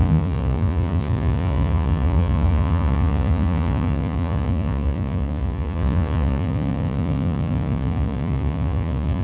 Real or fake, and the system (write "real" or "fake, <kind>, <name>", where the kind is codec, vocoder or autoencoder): fake, vocoder, Vocos